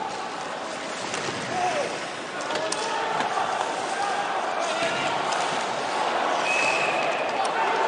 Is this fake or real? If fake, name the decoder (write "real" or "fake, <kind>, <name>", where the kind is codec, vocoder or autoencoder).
real